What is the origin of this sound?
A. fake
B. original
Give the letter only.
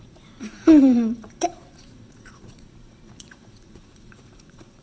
A